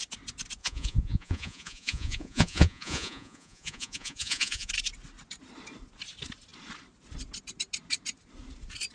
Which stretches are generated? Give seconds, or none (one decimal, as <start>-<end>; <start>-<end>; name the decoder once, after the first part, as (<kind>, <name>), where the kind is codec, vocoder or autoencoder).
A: 0.6-4.7 (vocoder, Vocos)